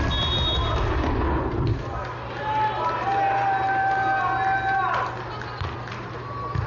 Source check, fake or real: real